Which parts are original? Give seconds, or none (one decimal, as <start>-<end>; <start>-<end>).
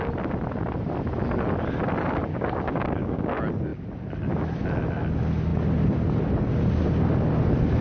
0.0-2.3; 3.3-7.8